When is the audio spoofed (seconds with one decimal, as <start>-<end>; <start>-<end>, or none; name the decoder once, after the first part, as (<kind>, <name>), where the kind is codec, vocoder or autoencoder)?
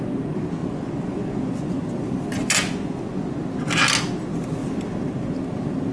0.6-1.9 (vocoder, Vocos); 2.4-3.4